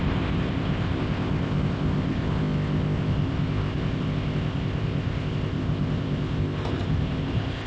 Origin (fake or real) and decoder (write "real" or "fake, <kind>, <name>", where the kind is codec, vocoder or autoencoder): fake, codec, ZipCodec